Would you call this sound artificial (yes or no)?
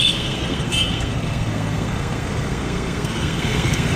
yes